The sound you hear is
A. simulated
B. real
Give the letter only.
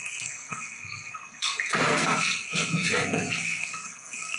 A